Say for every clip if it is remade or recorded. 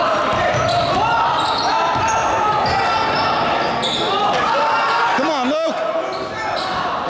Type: recorded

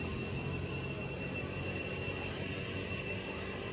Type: remade